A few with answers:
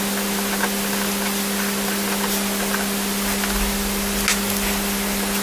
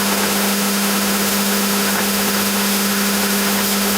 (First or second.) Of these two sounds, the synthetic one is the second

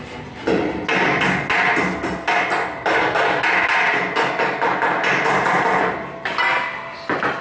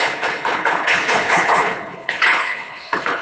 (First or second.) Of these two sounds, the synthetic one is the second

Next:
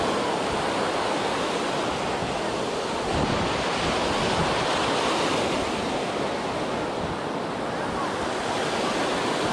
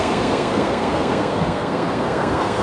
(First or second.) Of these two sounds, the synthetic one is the second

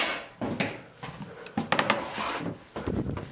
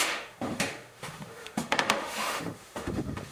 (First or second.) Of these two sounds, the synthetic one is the second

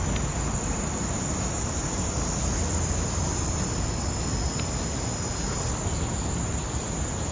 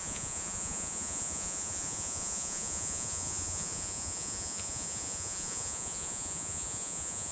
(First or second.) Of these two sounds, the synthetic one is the second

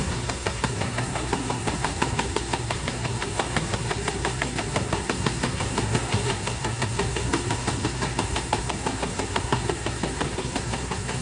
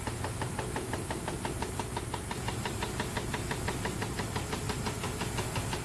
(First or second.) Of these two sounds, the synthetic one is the first